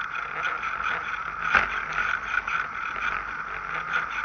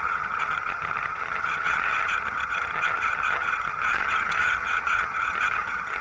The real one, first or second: first